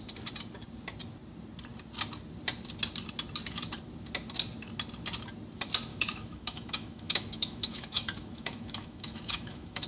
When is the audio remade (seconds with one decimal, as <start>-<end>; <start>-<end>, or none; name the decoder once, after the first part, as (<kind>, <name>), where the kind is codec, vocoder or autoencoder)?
5.9-9.9 (autoencoder, DAC-VAE)

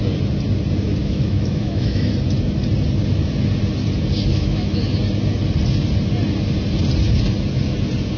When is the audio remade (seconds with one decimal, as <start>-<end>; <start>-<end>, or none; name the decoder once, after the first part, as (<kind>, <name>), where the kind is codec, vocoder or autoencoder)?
1.0-2.1 (autoencoder, DAC-VAE); 4.3-4.8

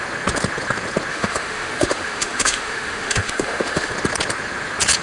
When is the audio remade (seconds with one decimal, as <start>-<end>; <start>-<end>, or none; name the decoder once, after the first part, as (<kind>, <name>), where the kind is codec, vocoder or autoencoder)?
1.1-3.9 (autoencoder, DAC-VAE)

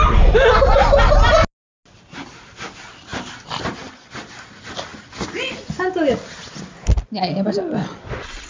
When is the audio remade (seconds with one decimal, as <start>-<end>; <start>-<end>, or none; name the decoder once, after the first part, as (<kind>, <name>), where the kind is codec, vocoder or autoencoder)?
none

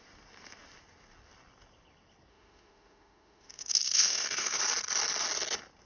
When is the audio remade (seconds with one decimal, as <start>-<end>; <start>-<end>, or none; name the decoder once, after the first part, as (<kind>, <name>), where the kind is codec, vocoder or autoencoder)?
2.3-4.6 (autoencoder, DAC-VAE)

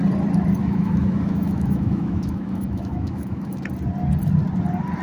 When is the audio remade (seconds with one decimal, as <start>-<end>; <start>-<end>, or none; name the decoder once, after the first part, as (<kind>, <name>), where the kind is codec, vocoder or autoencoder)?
0.6-3.6 (autoencoder, DAC-VAE)

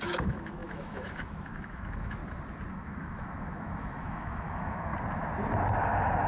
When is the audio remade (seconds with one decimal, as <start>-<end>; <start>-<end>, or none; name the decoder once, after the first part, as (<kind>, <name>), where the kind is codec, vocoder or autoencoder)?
0.0-2.2 (autoencoder, DAC-VAE); 2.7-4.9

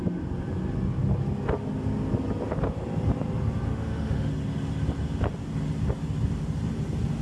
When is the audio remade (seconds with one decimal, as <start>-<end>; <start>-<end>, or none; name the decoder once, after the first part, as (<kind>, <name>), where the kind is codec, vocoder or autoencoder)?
3.7-4.3 (autoencoder, DAC-VAE)